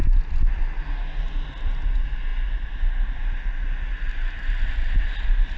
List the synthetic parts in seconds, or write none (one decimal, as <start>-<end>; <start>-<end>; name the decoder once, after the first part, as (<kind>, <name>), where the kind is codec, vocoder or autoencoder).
none